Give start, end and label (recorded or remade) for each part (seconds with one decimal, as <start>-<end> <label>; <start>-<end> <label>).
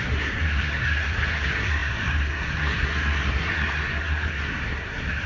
0.0-5.3 remade